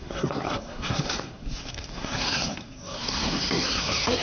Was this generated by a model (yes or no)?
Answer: yes